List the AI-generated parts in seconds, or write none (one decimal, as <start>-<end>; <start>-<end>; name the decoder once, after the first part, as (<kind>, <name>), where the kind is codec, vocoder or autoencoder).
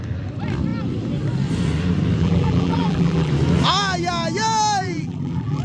2.2-3.3 (vocoder, BigVGAN v2); 4.8-5.6